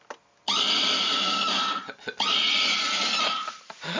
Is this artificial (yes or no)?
no